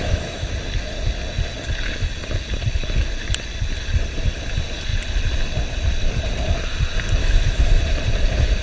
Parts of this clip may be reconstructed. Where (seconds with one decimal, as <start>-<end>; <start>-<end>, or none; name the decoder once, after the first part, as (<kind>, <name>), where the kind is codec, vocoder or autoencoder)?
0.0-0.5 (autoencoder, DAC-VAE); 7.2-7.8